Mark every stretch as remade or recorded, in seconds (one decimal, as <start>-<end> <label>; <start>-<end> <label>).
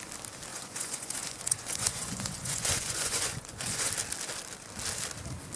0.0-0.5 recorded; 0.5-3.9 remade; 3.9-5.6 recorded